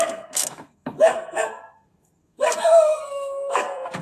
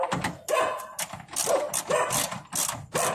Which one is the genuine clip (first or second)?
second